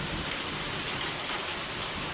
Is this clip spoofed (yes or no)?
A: no